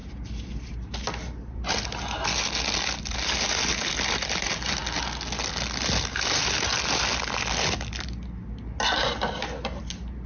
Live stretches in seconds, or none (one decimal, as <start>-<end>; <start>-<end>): 0.0-10.3